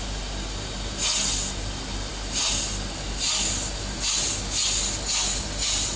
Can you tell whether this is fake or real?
real